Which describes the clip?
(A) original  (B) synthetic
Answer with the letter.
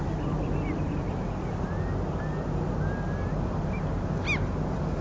A